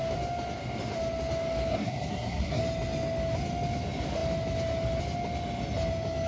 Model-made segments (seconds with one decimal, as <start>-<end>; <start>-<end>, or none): 1.7-2.6